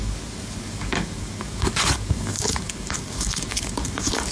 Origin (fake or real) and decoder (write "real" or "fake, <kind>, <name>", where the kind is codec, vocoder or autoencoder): fake, codec, DAC